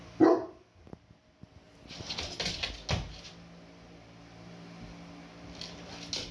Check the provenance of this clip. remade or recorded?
recorded